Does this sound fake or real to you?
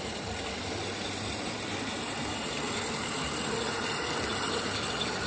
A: real